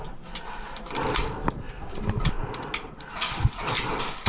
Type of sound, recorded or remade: recorded